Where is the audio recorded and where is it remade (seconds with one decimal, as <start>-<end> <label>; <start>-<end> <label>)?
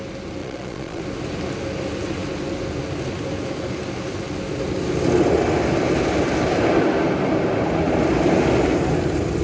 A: 0.0-0.4 recorded; 0.4-1.0 remade; 1.0-9.4 recorded